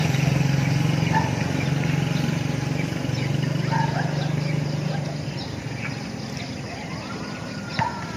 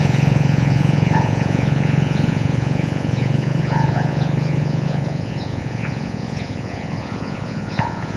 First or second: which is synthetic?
second